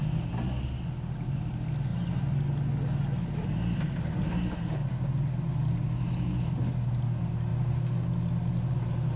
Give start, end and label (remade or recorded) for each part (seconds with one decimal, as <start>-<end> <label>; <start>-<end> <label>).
0.0-9.2 recorded